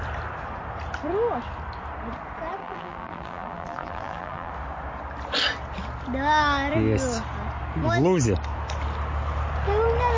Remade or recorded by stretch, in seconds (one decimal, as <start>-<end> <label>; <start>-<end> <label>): 0.0-2.6 recorded; 2.6-4.5 remade; 4.5-10.2 recorded

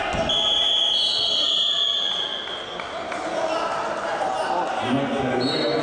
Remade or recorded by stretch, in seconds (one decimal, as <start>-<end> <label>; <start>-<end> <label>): 0.0-5.8 recorded

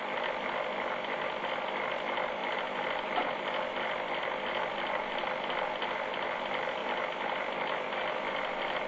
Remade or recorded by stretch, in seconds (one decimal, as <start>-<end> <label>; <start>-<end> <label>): 0.0-6.8 recorded; 6.8-8.2 remade; 8.2-8.9 recorded

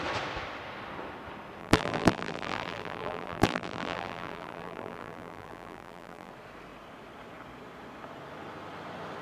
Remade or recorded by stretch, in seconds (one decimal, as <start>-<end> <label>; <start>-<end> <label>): 0.0-1.6 recorded; 1.6-6.3 remade; 6.3-9.2 recorded

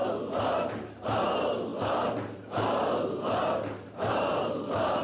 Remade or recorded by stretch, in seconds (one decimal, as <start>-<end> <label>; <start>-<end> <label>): 0.0-1.0 remade; 1.0-1.7 recorded; 1.7-5.0 remade